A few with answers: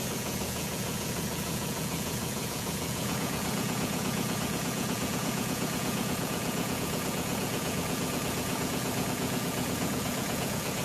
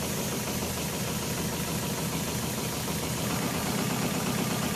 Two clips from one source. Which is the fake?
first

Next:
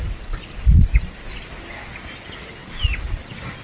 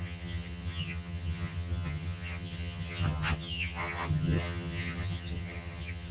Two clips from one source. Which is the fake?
second